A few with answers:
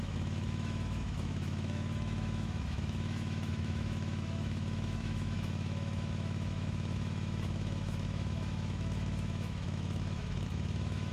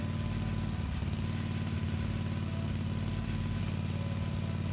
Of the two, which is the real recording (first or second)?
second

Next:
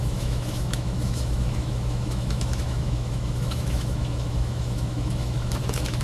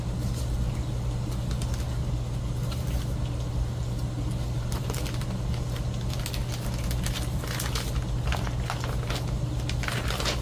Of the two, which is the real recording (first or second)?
second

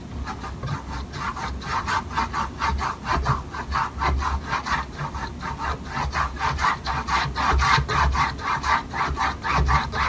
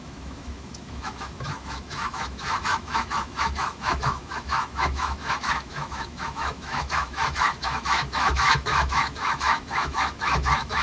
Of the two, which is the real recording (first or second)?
first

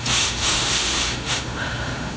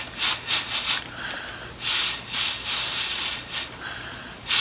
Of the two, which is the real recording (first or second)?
second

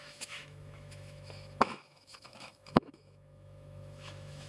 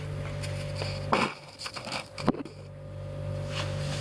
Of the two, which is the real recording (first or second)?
second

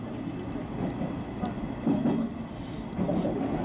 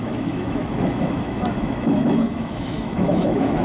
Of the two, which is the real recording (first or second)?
first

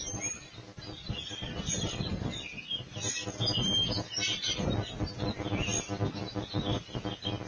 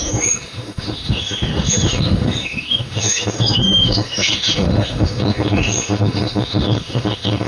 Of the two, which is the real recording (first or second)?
first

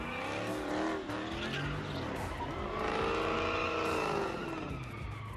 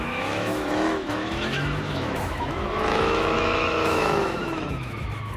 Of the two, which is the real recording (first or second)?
first